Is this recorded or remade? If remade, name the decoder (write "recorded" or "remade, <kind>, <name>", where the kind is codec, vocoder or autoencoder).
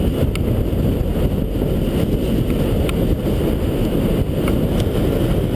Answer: recorded